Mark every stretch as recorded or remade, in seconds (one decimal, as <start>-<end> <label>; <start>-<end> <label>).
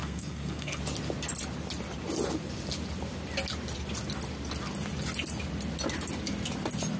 0.0-0.8 remade; 0.8-7.0 recorded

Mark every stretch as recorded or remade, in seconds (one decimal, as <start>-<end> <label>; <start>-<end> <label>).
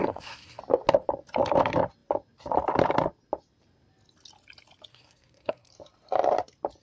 0.0-0.6 remade; 0.6-4.9 recorded; 4.9-5.7 remade; 5.7-6.8 recorded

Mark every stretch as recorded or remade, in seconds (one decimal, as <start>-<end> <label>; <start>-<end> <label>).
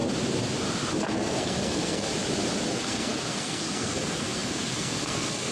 0.0-1.0 recorded; 1.0-2.1 remade; 2.1-2.7 recorded; 2.7-5.5 remade